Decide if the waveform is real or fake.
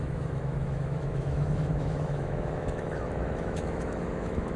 fake